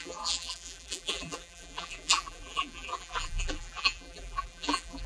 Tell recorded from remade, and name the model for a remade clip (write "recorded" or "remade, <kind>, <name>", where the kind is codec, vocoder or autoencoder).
remade, vocoder, BigVGAN v2